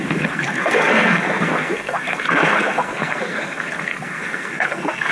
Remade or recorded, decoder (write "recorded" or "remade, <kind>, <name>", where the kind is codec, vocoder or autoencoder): remade, codec, SNAC